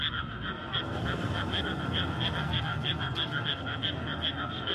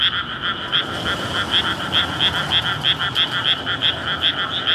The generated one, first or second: first